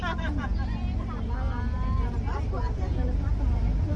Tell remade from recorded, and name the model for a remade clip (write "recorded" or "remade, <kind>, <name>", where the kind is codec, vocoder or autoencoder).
recorded